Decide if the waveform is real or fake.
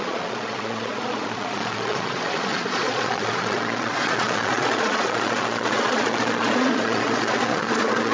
fake